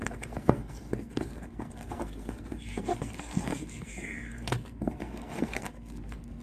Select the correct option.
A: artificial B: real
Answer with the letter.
A